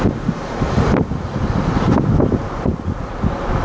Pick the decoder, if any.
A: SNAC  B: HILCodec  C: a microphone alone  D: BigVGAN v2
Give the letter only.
C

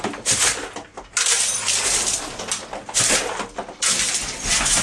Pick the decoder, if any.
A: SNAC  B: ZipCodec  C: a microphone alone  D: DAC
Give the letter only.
C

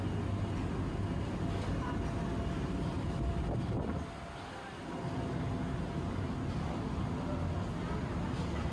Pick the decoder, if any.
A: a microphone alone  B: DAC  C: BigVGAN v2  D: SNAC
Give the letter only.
A